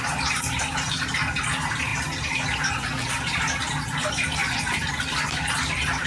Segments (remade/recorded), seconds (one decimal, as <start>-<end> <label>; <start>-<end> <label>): 0.0-6.1 recorded